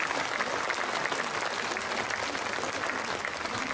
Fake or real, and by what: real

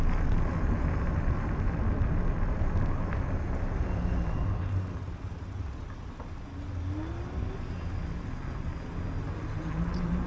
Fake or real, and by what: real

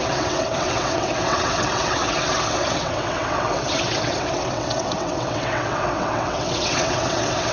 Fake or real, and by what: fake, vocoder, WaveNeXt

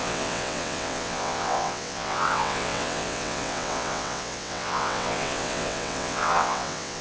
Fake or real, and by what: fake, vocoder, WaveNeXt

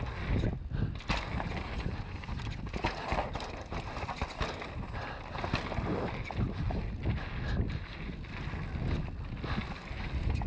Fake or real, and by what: real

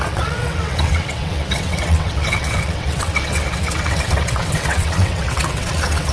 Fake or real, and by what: fake, vocoder, WaveNeXt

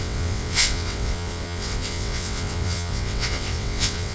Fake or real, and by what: fake, vocoder, WaveNeXt